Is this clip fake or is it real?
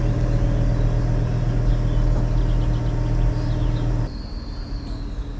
real